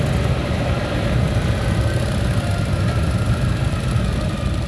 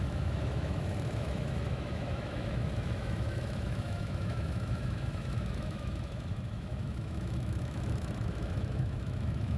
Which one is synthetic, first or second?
second